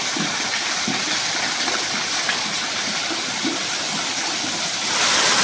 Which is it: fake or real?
real